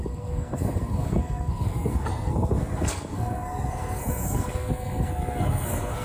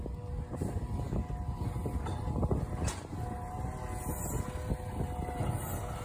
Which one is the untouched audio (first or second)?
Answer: second